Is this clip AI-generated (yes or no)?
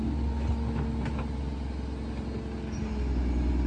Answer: no